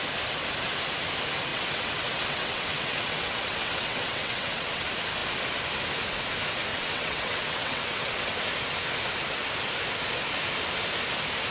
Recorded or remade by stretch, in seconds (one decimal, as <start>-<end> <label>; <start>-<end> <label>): 0.0-1.5 recorded; 1.5-4.8 remade; 4.8-6.7 recorded; 6.7-8.3 remade; 8.3-11.5 recorded